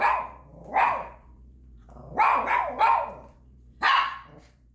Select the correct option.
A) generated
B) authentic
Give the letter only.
A